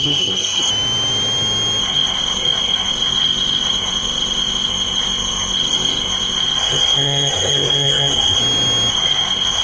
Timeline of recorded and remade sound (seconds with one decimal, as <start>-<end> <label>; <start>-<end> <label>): 0.0-0.7 remade; 0.7-1.8 recorded; 1.8-8.4 remade; 8.4-8.9 recorded; 8.9-9.6 remade